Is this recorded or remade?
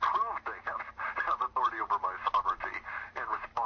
recorded